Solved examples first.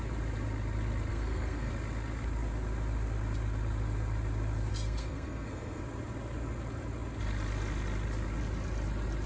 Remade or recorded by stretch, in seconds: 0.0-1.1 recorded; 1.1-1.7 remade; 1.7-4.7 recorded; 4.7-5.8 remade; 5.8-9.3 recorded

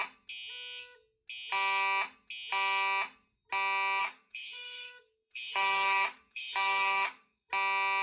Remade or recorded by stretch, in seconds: 0.0-4.0 recorded; 4.0-7.5 remade; 7.5-8.0 recorded

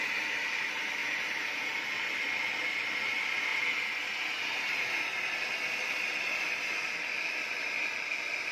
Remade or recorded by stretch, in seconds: 0.0-8.5 recorded

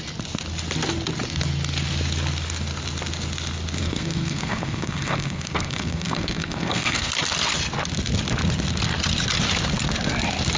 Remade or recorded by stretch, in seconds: 0.0-3.8 recorded; 3.8-7.1 remade; 7.1-10.6 recorded

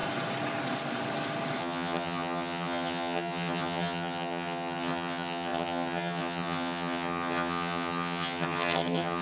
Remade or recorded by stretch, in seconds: 0.0-1.6 recorded; 1.6-9.2 remade

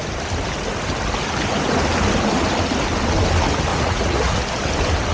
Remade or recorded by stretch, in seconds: 0.0-3.7 recorded; 3.7-4.4 remade; 4.4-5.1 recorded

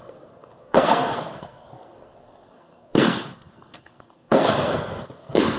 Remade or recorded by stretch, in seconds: 0.0-5.6 remade